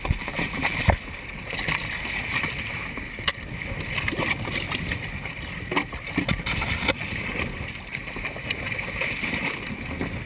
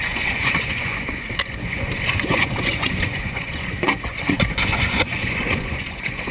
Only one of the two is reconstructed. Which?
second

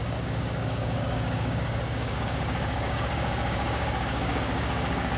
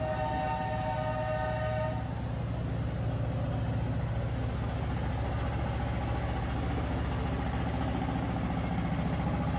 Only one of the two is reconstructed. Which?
first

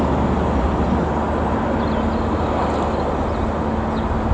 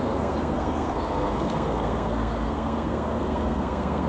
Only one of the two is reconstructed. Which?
second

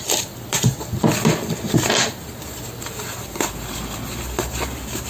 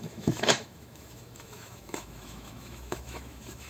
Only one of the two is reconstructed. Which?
second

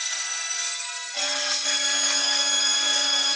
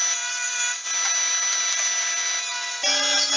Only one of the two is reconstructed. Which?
first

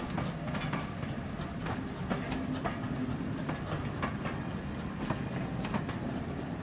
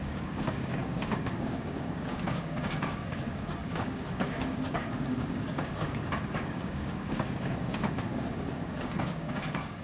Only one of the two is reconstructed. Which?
second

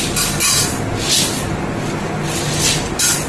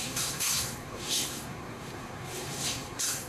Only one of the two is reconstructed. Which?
second